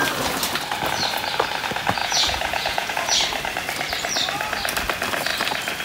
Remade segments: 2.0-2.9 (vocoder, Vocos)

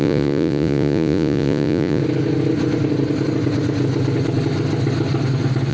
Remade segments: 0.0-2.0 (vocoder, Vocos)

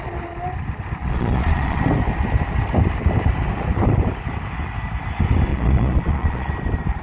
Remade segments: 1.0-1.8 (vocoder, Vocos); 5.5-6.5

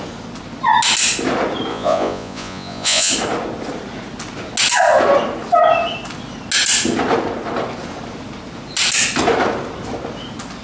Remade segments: 1.7-3.1 (vocoder, Vocos)